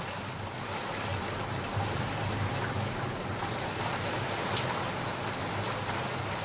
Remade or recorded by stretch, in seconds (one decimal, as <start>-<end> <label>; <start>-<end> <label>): 0.0-6.4 recorded